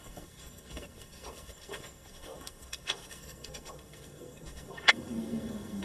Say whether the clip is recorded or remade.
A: remade